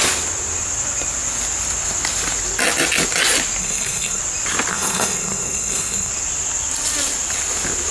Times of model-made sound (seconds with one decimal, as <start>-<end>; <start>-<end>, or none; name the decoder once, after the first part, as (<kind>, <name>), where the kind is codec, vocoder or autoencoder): 3.6-4.2 (codec, SNAC); 4.7-6.1